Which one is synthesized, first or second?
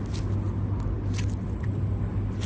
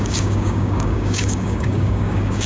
second